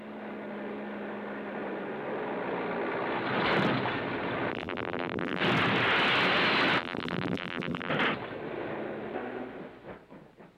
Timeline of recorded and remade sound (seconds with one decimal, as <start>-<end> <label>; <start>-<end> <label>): 0.0-4.5 recorded; 4.5-5.4 remade; 5.4-6.8 recorded; 6.8-7.9 remade; 7.9-10.6 recorded